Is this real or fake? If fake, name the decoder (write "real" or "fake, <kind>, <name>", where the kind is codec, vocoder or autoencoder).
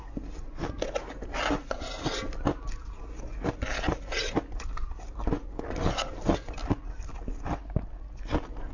real